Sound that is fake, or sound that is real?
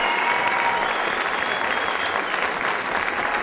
real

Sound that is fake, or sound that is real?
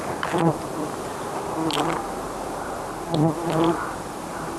real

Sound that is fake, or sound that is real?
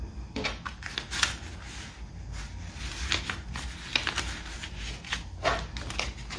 real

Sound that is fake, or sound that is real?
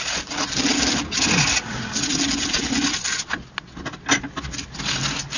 real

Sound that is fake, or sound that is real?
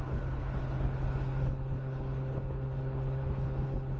fake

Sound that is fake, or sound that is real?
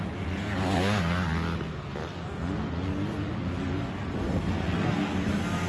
real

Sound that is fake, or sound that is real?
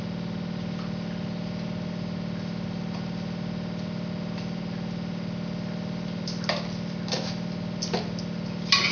real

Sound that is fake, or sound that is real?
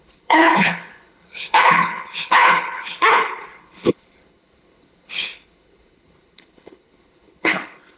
fake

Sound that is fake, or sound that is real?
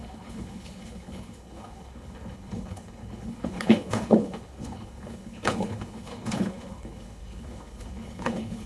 fake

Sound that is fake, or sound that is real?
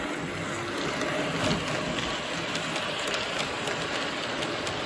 real